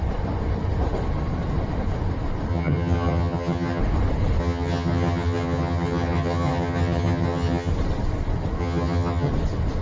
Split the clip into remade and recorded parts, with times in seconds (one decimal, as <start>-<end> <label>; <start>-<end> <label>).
0.0-2.5 recorded; 2.5-3.8 remade; 3.8-4.4 recorded; 4.4-7.7 remade; 7.7-8.6 recorded; 8.6-9.3 remade; 9.3-9.8 recorded